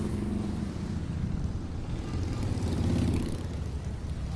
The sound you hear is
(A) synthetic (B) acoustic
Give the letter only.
B